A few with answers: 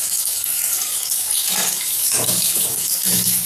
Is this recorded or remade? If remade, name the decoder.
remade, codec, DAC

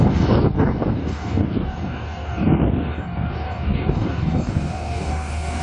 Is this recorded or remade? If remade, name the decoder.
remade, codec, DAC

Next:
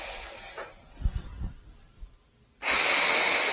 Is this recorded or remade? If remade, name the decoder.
recorded